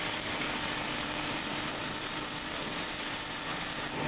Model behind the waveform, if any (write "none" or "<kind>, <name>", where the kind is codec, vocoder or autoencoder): vocoder, BigVGAN v2